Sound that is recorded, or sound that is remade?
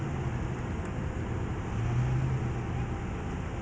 recorded